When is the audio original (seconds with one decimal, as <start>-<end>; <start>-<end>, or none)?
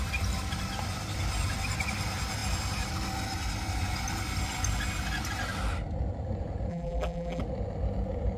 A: 0.0-6.7; 7.4-8.4